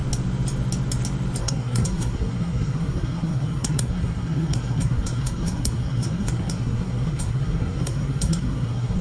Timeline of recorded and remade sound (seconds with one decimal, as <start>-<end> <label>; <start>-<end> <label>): 0.0-1.4 recorded; 1.4-9.0 remade